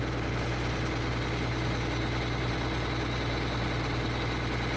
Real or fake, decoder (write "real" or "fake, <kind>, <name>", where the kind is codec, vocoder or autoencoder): real